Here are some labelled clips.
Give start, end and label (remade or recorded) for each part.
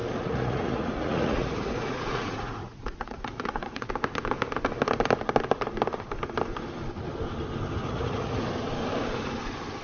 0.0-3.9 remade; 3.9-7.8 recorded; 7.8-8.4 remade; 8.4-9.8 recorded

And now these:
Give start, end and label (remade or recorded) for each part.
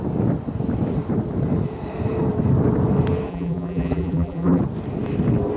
0.0-3.3 recorded; 3.3-4.6 remade; 4.6-5.6 recorded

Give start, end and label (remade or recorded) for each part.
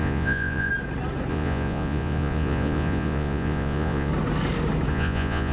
0.0-0.7 remade; 0.7-1.3 recorded; 1.3-4.1 remade; 4.1-4.9 recorded; 4.9-5.5 remade